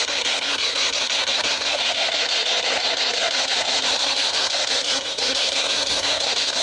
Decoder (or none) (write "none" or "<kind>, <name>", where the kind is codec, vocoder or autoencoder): codec, SNAC